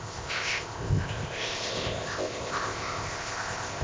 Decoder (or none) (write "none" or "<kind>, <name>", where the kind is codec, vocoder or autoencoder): codec, ZipCodec